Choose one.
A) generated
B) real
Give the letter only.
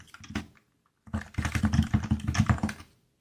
B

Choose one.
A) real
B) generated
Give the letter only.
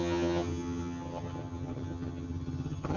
B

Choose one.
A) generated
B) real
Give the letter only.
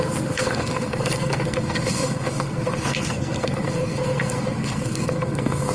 A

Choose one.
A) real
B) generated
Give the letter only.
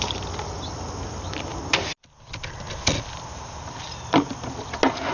A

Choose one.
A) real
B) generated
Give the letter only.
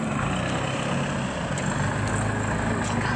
A